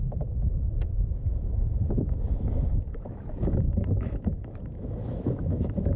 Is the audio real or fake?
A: fake